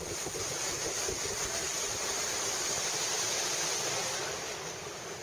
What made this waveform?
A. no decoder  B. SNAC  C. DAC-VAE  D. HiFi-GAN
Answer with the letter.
A